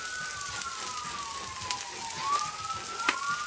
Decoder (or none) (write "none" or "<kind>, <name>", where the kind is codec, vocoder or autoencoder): none